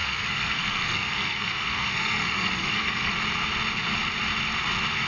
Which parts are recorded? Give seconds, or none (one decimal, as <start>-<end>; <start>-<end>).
3.1-5.1